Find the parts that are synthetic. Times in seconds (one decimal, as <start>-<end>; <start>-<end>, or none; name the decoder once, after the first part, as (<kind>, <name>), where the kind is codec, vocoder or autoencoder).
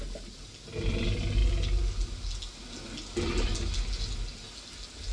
none